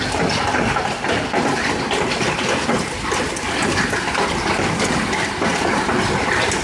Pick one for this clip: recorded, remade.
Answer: recorded